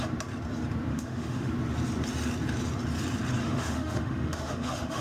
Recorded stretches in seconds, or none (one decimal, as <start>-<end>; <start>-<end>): 0.0-0.9; 1.5-3.4